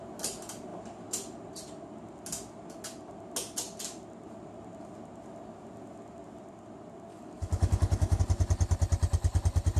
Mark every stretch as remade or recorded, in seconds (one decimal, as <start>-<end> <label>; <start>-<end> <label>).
0.0-7.1 recorded; 7.1-8.2 remade; 8.2-9.8 recorded